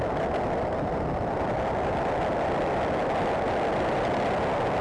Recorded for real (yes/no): yes